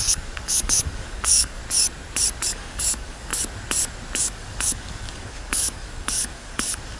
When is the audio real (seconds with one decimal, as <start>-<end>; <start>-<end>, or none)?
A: 1.6-2.5; 3.3-4.2